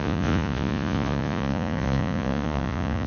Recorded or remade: remade